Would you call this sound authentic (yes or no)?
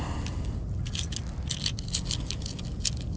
yes